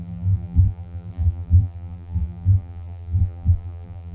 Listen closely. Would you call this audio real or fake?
fake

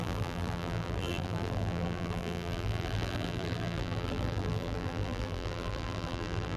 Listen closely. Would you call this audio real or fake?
fake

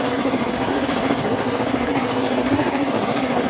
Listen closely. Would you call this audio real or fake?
fake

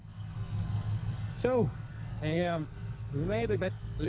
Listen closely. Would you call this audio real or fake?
fake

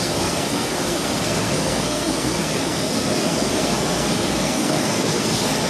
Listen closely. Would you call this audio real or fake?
fake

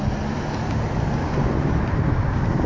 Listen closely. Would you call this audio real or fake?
real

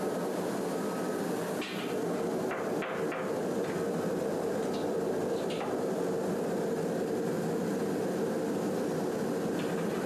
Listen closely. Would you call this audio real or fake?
real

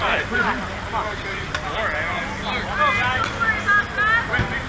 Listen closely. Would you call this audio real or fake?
real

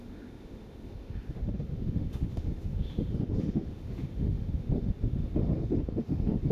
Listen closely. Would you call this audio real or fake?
fake